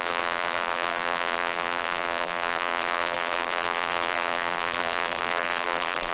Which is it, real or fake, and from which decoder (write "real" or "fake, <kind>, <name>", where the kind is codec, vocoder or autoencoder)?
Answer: fake, vocoder, BigVGAN v2